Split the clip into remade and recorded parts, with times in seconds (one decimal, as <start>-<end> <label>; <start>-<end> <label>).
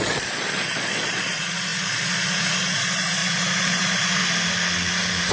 0.0-4.2 remade; 4.2-5.3 recorded